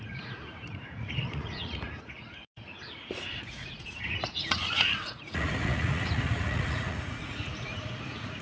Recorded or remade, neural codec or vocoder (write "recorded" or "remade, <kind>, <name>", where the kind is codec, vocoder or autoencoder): remade, vocoder, Vocos